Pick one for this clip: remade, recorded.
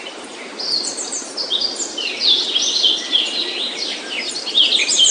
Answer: recorded